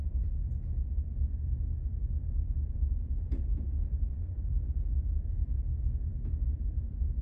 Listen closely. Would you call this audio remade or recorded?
remade